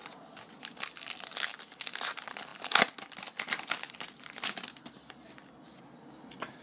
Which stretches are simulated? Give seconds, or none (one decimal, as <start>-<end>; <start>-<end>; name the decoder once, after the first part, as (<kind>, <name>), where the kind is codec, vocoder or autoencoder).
none